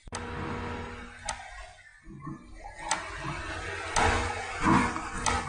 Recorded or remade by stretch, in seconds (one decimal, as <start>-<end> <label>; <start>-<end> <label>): 0.0-5.5 recorded